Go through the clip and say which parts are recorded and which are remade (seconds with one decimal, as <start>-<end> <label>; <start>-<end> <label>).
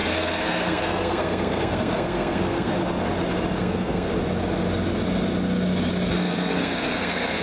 0.0-2.8 remade; 2.8-3.6 recorded; 3.6-4.1 remade; 4.1-6.1 recorded; 6.1-7.4 remade